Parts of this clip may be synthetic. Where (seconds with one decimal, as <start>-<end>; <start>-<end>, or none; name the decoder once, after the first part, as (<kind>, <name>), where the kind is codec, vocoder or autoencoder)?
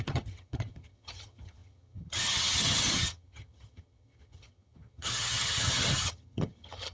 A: 0.0-6.9 (vocoder, HiFi-GAN)